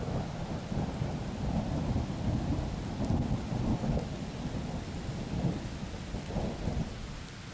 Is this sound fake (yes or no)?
no